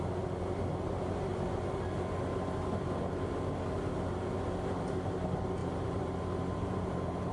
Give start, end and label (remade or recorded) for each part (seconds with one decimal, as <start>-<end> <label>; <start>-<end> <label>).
0.0-5.6 recorded; 5.6-7.3 remade